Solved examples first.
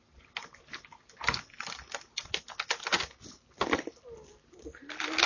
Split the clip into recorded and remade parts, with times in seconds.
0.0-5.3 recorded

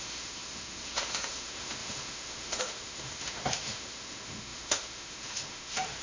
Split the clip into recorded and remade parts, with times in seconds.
0.0-6.0 remade

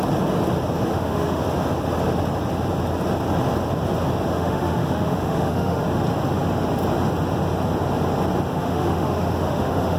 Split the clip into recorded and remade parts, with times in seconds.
0.0-0.9 recorded; 0.9-1.4 remade; 1.4-4.3 recorded; 4.3-5.8 remade; 5.8-8.5 recorded; 8.5-10.0 remade

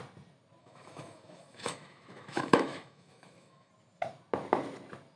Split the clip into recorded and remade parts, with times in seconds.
0.0-0.6 recorded; 0.6-3.7 remade; 3.7-5.2 recorded

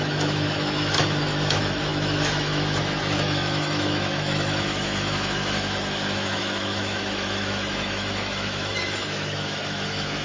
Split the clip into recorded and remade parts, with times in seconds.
0.0-10.2 remade

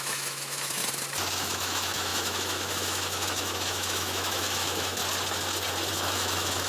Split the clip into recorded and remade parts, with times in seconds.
0.0-0.8 remade; 0.8-1.4 recorded; 1.4-5.0 remade; 5.0-5.9 recorded; 5.9-6.7 remade

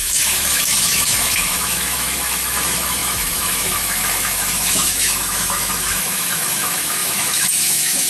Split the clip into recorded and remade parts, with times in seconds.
0.0-8.1 remade

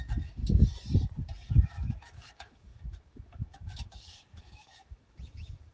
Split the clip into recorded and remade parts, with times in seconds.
0.0-0.4 remade; 0.4-1.5 recorded; 1.5-5.7 remade